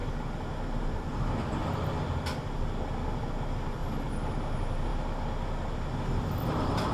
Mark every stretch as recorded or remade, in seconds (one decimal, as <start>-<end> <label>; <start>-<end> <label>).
0.0-0.9 recorded; 0.9-1.6 remade; 1.6-3.2 recorded; 3.2-3.8 remade; 3.8-4.3 recorded; 4.3-4.9 remade; 4.9-6.5 recorded; 6.5-6.9 remade